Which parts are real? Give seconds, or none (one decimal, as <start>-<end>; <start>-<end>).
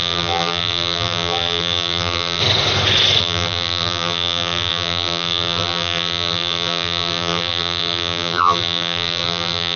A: 2.4-3.2